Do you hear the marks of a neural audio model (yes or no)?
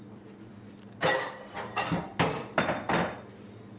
no